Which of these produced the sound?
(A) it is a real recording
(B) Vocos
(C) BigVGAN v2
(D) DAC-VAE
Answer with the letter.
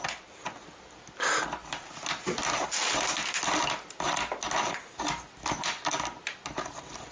A